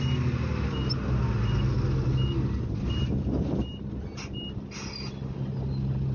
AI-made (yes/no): no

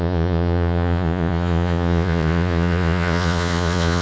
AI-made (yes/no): yes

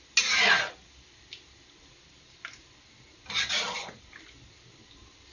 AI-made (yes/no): no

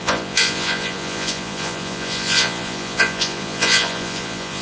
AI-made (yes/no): yes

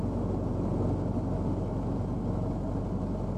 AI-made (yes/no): no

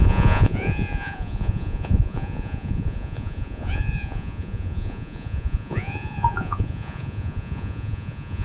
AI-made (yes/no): yes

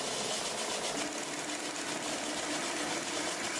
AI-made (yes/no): no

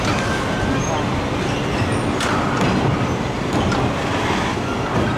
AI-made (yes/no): no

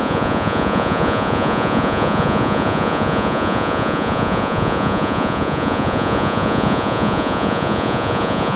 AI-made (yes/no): yes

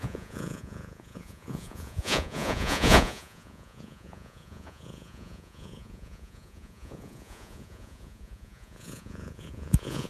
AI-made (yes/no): yes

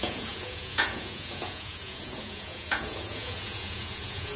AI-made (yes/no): yes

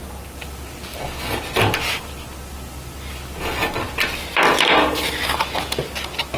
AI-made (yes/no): no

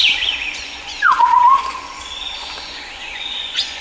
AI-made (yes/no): yes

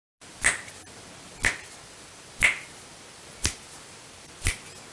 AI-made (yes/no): no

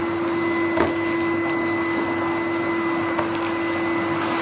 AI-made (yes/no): no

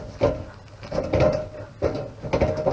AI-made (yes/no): no